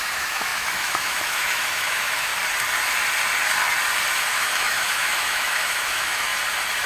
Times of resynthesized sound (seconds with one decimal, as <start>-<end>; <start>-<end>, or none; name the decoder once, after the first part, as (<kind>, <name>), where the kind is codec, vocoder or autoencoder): 0.0-2.3 (autoencoder, DAC-VAE); 4.3-6.3